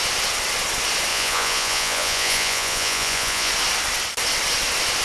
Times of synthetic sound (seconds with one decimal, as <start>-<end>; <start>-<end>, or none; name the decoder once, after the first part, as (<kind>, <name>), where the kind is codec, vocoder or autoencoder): 1.1-3.5 (vocoder, Vocos)